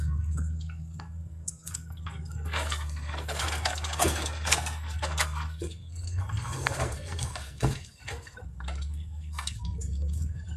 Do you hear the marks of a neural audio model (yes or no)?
yes